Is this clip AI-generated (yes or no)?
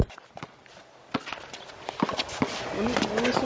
no